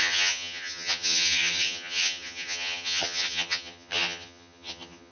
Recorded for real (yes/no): no